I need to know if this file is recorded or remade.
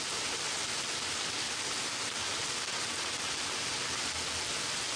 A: recorded